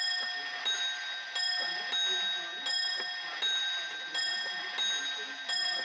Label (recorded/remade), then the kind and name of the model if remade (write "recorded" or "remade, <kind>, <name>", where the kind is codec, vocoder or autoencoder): recorded